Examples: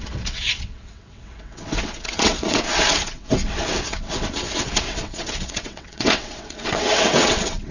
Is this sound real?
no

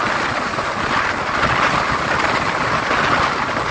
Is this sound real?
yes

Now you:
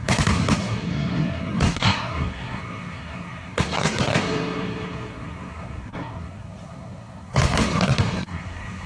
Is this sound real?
no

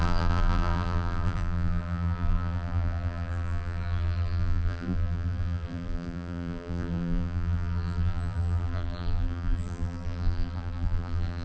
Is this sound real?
no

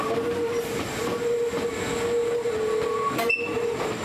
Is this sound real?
yes